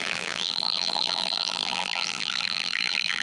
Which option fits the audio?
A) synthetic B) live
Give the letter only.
A